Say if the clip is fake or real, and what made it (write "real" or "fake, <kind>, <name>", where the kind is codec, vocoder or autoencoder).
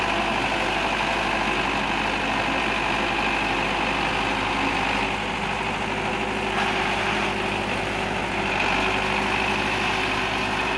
real